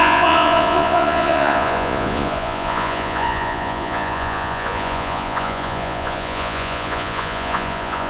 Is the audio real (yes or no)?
no